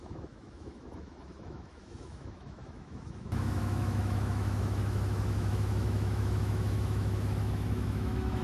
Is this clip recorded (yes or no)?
no